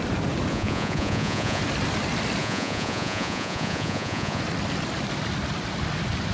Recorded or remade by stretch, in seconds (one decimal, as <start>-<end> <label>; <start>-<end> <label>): 0.0-0.5 recorded; 0.5-1.6 remade; 1.6-2.4 recorded; 2.4-4.4 remade; 4.4-6.3 recorded